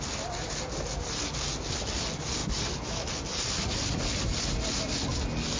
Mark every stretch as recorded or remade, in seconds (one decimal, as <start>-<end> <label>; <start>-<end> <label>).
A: 0.0-5.6 recorded